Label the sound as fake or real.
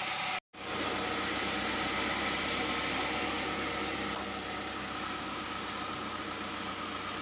real